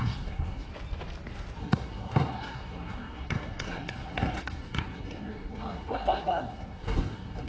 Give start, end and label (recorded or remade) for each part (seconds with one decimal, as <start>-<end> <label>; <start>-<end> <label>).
0.0-0.7 remade; 0.7-1.6 recorded; 1.6-7.5 remade